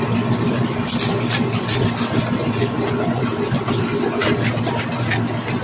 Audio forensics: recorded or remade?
recorded